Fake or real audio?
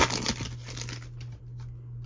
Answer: real